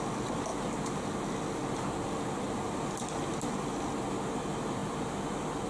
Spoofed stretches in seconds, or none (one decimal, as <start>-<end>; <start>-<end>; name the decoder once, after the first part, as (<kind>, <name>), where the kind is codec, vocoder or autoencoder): none